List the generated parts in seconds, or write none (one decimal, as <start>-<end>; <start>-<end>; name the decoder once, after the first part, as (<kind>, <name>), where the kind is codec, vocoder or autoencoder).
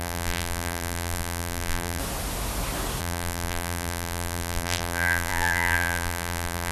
0.0-2.0 (vocoder, BigVGAN v2); 3.0-6.7